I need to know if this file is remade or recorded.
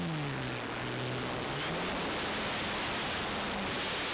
recorded